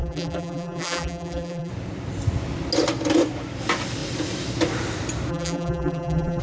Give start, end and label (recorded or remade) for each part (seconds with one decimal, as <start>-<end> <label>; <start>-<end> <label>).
0.0-1.7 remade; 1.7-5.3 recorded; 5.3-6.4 remade